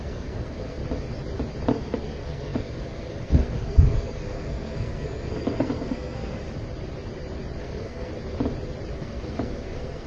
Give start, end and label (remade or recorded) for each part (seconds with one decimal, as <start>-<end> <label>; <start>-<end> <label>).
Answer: 0.0-0.8 remade; 0.8-1.7 recorded; 1.7-6.4 remade; 6.4-7.6 recorded; 7.6-8.1 remade; 8.1-8.9 recorded; 8.9-10.1 remade